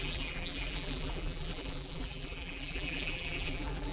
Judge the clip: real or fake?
fake